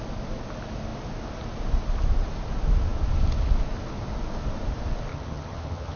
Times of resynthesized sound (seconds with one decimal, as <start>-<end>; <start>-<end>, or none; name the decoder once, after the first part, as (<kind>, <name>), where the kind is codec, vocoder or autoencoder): 5.1-6.0 (vocoder, HiFi-GAN)